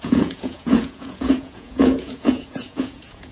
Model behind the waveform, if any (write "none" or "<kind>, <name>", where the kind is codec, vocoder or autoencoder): vocoder, Vocos